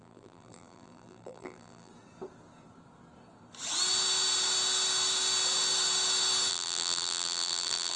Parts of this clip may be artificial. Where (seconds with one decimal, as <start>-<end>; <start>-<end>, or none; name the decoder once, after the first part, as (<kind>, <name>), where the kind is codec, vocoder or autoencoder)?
0.0-1.9 (vocoder, BigVGAN v2); 6.5-8.0